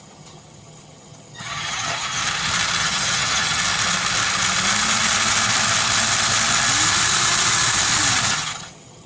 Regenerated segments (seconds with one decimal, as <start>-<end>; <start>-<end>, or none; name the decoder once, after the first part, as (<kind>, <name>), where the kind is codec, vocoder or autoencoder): 0.0-2.2 (vocoder, HiFi-GAN); 2.8-3.6; 8.3-9.1